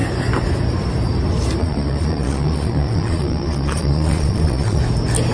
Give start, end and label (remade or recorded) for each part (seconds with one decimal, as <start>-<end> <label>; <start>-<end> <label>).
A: 0.0-1.6 recorded; 1.6-4.8 remade; 4.8-5.3 recorded